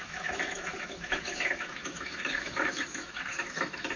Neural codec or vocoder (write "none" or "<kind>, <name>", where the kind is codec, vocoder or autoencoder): autoencoder, DAC-VAE